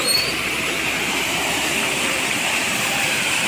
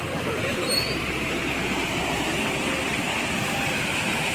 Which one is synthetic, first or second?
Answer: first